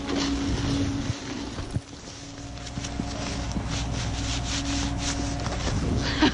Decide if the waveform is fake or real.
real